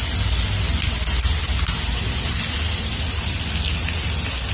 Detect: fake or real real